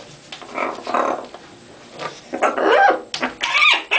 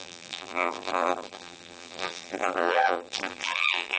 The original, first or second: first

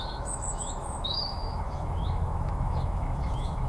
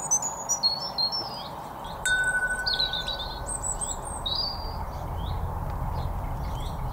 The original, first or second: second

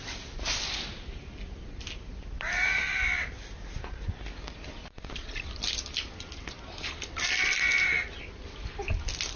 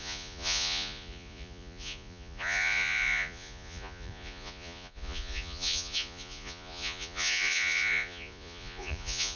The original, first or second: first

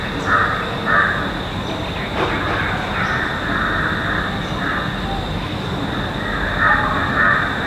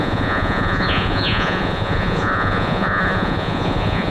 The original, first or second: first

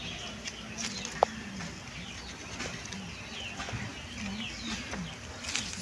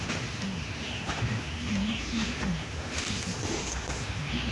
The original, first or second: first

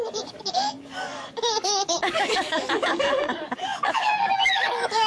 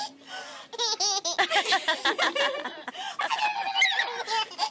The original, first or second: second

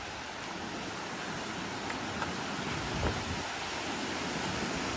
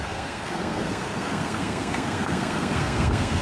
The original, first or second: first